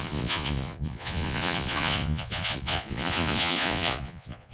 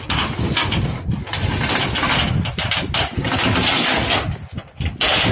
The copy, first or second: first